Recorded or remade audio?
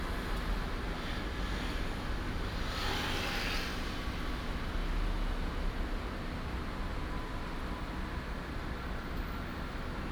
recorded